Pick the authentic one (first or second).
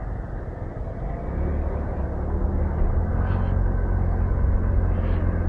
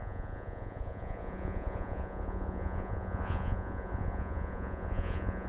first